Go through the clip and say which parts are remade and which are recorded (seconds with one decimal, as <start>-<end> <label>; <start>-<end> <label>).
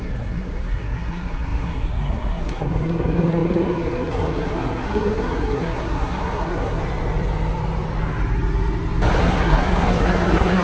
0.0-6.8 remade; 6.8-9.2 recorded; 9.2-10.6 remade